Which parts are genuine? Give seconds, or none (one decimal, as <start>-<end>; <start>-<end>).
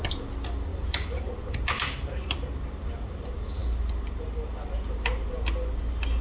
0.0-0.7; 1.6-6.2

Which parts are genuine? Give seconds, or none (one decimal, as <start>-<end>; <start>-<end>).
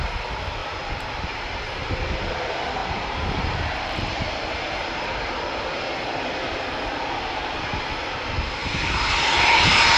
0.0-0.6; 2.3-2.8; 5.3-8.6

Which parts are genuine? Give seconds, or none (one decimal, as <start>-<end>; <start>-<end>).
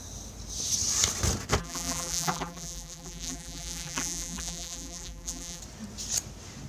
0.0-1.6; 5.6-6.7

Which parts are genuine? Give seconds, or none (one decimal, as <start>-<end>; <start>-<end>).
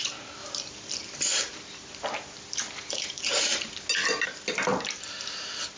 0.0-0.4; 3.9-4.7